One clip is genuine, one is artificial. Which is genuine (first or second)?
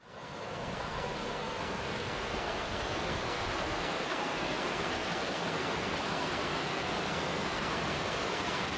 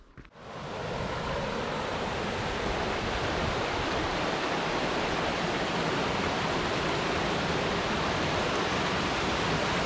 second